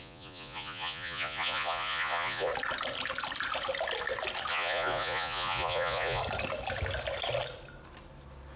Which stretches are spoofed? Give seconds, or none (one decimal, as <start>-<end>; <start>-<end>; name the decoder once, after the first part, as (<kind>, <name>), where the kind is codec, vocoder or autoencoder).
0.0-2.5 (vocoder, Vocos); 4.5-6.2

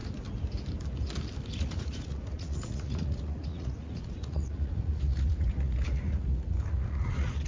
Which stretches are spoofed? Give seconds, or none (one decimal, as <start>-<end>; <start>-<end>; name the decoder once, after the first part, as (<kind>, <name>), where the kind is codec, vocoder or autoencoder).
1.6-7.5 (vocoder, Vocos)

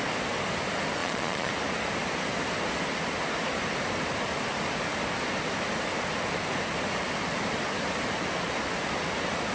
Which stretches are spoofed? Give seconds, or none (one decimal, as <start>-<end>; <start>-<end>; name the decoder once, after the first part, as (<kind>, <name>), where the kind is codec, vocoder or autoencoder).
1.0-1.5 (vocoder, Vocos)

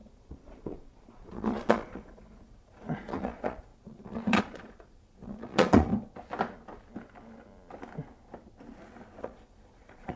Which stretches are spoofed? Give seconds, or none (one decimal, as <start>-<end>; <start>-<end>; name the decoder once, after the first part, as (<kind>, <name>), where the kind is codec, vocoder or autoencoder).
0.0-5.9 (vocoder, Vocos); 9.2-10.2

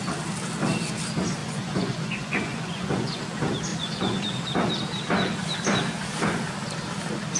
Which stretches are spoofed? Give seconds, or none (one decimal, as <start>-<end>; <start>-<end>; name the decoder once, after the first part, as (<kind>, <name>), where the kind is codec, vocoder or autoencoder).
1.4-3.2 (vocoder, Vocos); 3.7-4.2

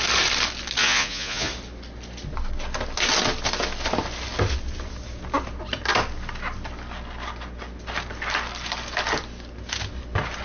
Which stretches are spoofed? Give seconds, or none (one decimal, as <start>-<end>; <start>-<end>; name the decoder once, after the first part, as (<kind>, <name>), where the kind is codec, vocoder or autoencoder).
0.8-1.5 (vocoder, Vocos)